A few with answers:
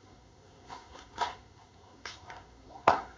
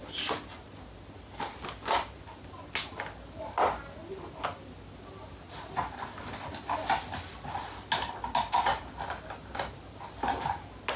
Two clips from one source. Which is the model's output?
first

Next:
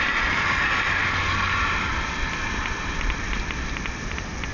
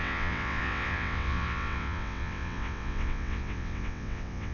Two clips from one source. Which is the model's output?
second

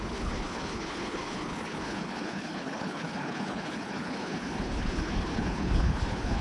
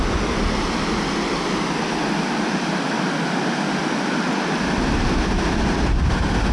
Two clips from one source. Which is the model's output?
first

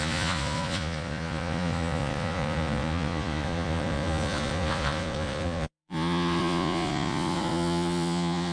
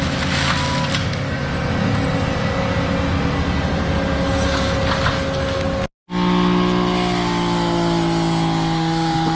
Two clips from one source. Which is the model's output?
first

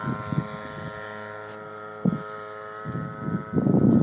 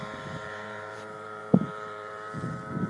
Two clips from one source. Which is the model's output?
second